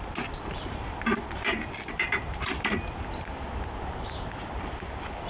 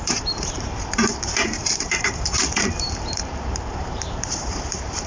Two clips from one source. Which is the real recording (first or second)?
first